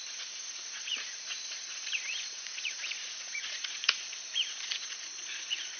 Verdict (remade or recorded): remade